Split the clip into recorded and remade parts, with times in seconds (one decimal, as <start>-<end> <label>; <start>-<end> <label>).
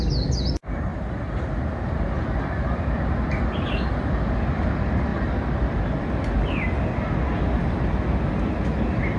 0.0-0.9 recorded; 0.9-1.4 remade; 1.4-9.2 recorded